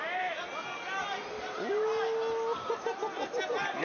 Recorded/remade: recorded